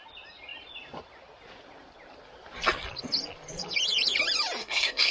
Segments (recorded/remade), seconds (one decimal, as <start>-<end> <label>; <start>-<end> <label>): 0.0-4.6 recorded; 4.6-5.1 remade